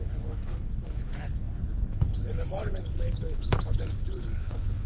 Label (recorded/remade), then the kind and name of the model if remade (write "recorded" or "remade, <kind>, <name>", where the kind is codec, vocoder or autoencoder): remade, codec, HILCodec